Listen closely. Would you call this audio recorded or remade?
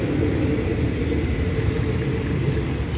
recorded